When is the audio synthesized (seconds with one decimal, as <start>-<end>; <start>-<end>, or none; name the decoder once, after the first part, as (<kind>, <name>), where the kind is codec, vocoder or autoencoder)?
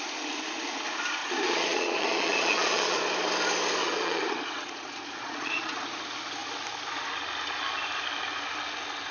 1.2-3.0 (vocoder, Vocos); 3.8-5.9